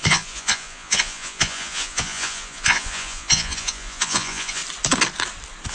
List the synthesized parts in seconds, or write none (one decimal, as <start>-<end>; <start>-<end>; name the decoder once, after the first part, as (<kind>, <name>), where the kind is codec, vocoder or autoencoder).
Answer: 0.0-4.6 (vocoder, Vocos)